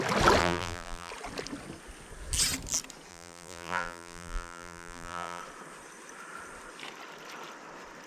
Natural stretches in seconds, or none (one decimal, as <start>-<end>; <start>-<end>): 0.0-0.4; 1.1-3.1; 5.4-8.1